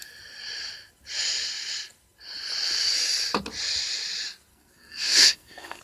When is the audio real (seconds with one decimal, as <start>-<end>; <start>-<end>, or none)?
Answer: 0.0-4.5